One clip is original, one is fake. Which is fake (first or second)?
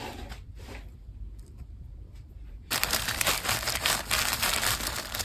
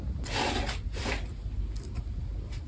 first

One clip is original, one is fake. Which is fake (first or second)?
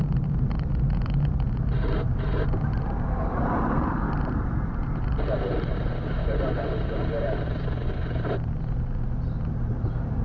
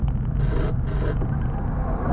first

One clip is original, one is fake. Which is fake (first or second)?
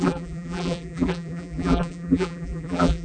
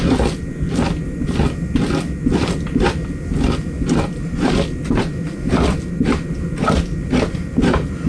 first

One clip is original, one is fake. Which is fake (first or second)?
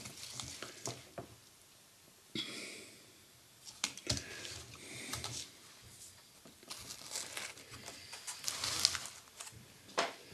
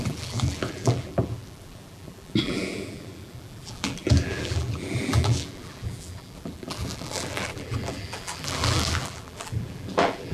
second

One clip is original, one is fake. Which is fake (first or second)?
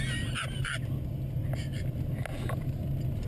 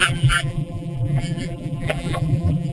second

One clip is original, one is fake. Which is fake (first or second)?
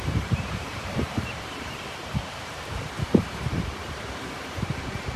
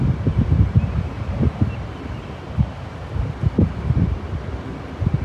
first